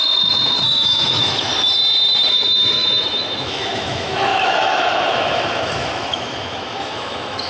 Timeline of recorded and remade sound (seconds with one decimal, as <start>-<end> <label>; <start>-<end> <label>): 0.0-1.5 remade; 1.5-2.3 recorded; 2.3-7.5 remade